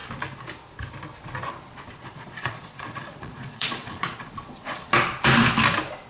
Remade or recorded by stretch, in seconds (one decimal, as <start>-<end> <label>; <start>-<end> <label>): 0.0-1.9 recorded; 1.9-4.9 remade; 4.9-6.1 recorded